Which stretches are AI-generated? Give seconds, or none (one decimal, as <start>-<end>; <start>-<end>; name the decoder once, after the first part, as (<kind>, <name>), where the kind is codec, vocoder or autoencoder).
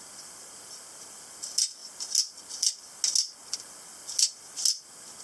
none